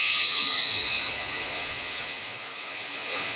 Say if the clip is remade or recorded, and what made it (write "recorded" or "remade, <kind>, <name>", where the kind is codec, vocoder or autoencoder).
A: remade, vocoder, Vocos